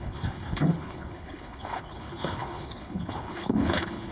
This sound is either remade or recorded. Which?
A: remade